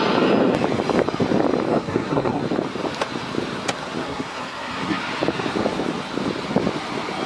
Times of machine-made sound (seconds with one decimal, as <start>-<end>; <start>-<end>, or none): 1.7-2.4; 4.0-5.0